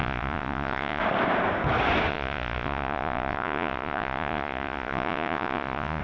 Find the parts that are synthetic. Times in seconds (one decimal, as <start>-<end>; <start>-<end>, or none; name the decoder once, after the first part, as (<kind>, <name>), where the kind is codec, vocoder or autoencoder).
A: 0.0-1.0 (vocoder, Vocos); 2.1-6.0